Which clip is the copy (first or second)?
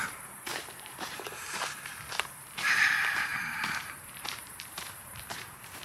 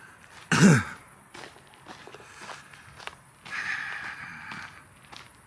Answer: first